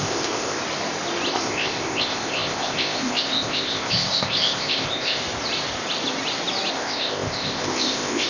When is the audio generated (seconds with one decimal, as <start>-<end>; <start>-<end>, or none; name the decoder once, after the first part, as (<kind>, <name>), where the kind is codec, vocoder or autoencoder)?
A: 0.0-0.6 (codec, ZipCodec); 1.3-5.2; 6.7-8.3